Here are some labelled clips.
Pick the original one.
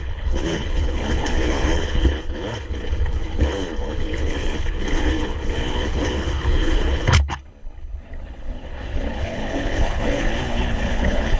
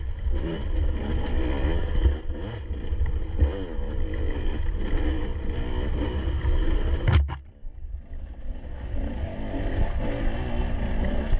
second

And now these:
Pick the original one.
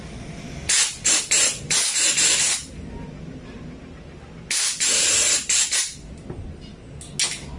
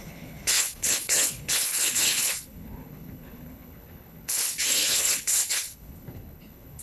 first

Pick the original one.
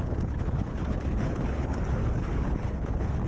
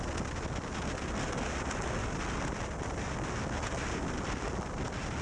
second